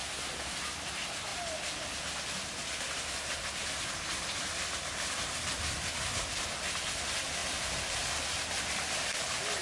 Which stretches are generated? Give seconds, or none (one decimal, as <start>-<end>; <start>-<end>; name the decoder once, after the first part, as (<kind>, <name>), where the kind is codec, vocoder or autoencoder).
none